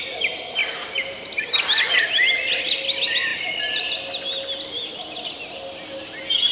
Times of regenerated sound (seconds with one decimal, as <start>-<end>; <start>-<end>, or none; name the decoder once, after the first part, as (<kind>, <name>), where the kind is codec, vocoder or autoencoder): 0.6-1.9 (vocoder, BigVGAN v2)